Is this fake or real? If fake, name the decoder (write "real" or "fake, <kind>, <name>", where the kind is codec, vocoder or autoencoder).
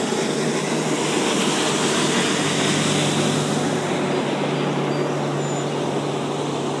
real